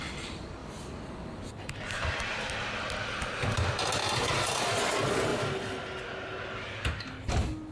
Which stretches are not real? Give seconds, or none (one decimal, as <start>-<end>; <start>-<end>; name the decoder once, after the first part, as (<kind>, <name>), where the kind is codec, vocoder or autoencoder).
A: 4.0-4.6 (vocoder, BigVGAN v2)